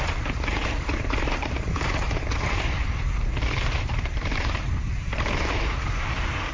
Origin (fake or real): fake